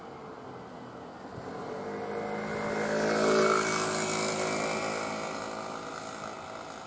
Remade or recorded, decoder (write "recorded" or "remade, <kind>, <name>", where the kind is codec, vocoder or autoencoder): recorded